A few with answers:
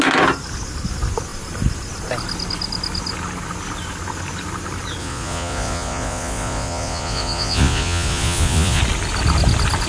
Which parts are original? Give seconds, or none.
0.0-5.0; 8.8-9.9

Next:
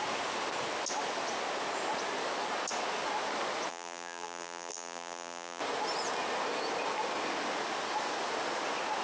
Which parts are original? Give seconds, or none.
0.0-3.7; 5.6-9.0

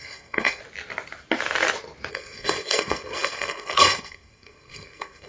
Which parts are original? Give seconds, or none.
0.6-2.1

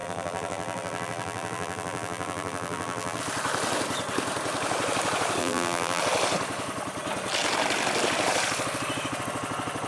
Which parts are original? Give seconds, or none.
3.2-5.4; 6.0-9.9

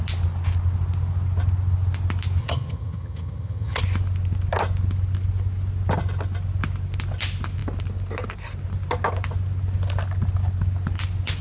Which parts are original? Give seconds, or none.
0.0-2.4; 3.8-11.4

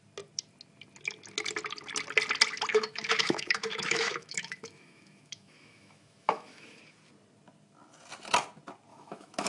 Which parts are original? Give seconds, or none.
0.0-2.7; 6.8-8.9

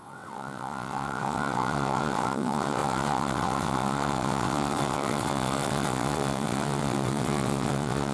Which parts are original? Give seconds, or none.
none